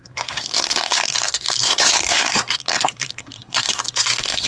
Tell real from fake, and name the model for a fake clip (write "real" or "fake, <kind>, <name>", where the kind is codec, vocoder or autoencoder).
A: fake, codec, SNAC